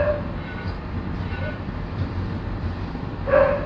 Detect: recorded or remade remade